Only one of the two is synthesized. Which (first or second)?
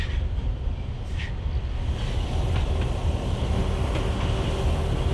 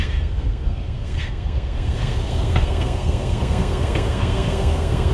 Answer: second